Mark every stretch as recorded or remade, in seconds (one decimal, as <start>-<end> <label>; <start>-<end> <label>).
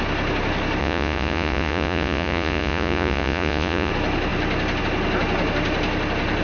0.0-0.8 recorded; 0.8-3.9 remade; 3.9-6.4 recorded